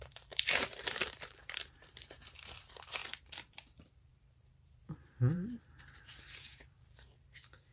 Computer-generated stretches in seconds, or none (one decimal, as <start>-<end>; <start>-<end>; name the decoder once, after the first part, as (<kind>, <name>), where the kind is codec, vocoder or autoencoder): 0.0-7.7 (vocoder, BigVGAN v2)